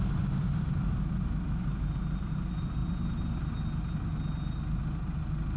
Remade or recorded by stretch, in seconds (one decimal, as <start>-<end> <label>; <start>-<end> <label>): 0.0-5.6 recorded